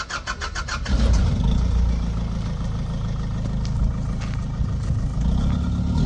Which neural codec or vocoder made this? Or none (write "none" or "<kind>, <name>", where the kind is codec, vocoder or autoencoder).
none